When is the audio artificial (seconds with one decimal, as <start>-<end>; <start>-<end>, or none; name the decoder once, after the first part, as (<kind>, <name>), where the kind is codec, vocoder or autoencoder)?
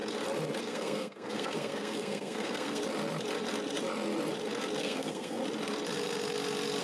0.6-2.8 (codec, SNAC); 4.8-5.4